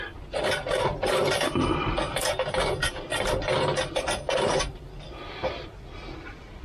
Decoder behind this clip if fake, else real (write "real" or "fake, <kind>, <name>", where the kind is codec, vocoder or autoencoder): real